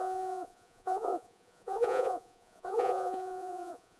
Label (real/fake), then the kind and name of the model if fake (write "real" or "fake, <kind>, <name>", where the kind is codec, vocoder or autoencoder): fake, vocoder, Vocos